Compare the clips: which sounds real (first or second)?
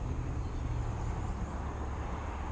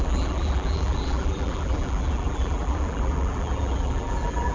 first